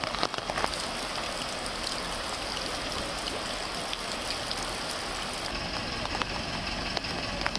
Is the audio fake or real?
real